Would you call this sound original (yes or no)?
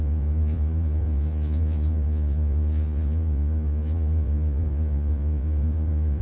no